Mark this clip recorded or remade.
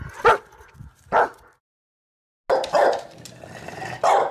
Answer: recorded